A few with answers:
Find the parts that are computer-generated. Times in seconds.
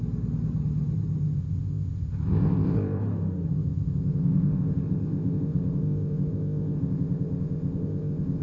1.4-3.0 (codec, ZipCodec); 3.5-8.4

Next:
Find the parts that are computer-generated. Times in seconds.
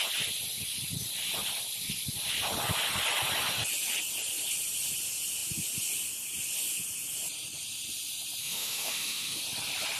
8.4-9.4 (autoencoder, DAC-VAE)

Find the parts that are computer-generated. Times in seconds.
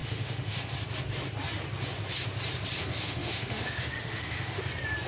0.0-0.6 (autoencoder, DAC-VAE); 2.8-4.6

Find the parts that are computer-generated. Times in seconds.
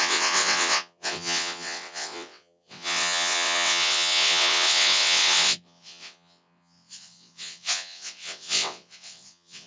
0.0-9.7 (vocoder, WaveNeXt)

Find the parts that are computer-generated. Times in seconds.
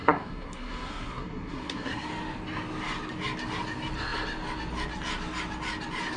0.0-2.1 (codec, SNAC)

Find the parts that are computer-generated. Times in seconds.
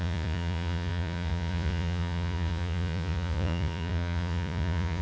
0.0-5.0 (vocoder, Vocos)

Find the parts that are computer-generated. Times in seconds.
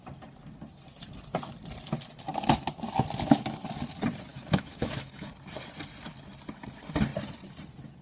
4.3-5.3 (autoencoder, DAC-VAE)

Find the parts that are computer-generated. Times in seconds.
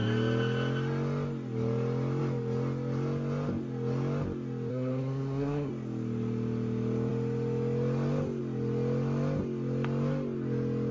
4.7-5.7 (codec, SNAC)